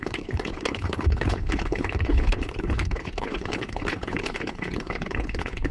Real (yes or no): no